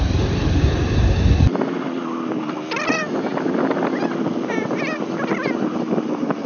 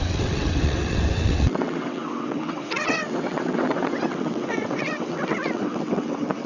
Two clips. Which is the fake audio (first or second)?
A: second